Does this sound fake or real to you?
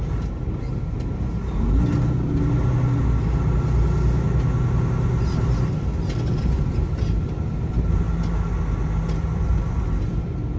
real